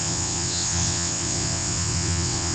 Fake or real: fake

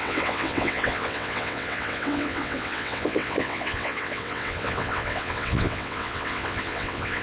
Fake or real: fake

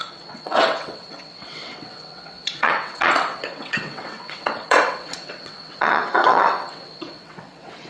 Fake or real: fake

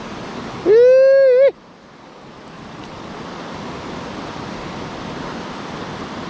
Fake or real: real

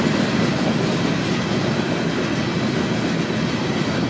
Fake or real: real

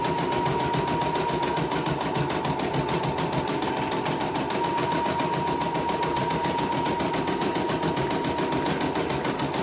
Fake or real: real